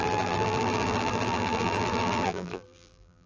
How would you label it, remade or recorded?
remade